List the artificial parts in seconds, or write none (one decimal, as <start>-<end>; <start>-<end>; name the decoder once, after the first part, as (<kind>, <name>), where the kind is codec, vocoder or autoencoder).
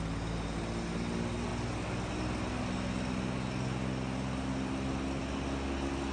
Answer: none